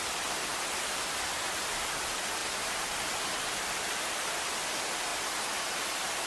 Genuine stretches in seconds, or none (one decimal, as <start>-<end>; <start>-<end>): 5.1-5.7